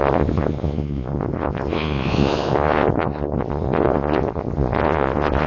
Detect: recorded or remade remade